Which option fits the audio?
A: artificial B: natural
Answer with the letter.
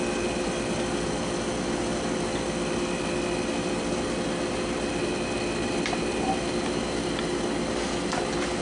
B